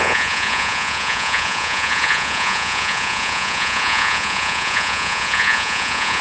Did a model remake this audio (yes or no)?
yes